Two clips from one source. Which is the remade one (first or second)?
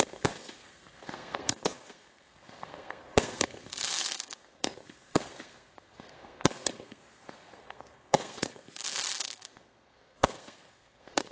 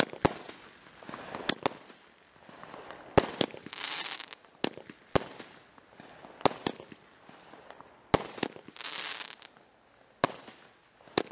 first